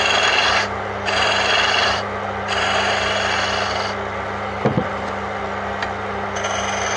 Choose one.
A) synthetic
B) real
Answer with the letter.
B